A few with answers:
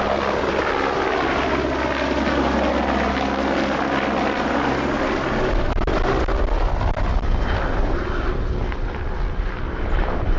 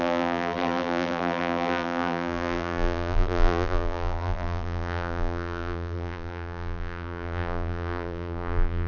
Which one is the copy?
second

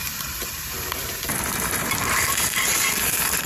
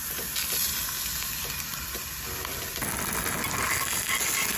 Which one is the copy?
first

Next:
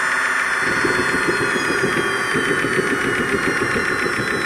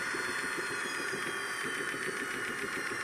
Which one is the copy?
second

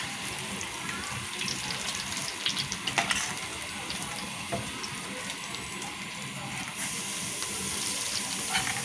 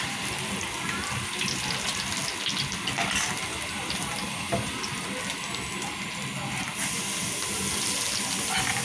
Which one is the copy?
first